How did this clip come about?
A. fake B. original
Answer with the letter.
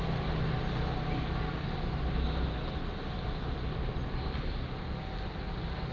B